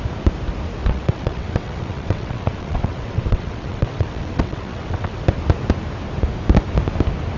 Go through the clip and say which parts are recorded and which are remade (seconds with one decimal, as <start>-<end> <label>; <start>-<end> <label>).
0.0-0.8 recorded; 0.8-5.2 remade; 5.2-7.4 recorded